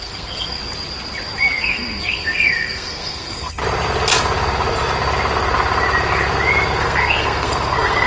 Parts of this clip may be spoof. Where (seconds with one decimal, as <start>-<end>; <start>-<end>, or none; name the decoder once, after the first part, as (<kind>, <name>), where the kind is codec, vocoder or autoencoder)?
0.0-0.6 (codec, SNAC); 1.6-3.6; 6.8-8.1

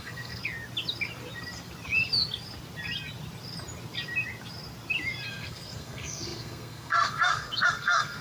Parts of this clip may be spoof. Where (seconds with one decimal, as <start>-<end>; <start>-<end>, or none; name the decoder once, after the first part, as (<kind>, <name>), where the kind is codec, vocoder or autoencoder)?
0.0-0.4 (codec, SNAC); 5.3-8.2